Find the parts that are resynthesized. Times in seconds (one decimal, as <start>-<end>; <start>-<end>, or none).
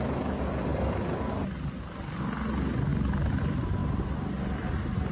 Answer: none